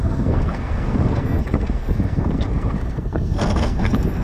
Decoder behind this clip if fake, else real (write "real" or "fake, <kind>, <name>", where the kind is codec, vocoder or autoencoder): fake, codec, SNAC